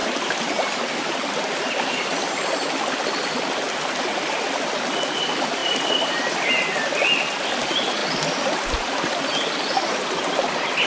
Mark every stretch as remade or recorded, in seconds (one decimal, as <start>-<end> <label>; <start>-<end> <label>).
0.0-5.6 recorded; 5.6-6.5 remade; 6.5-10.9 recorded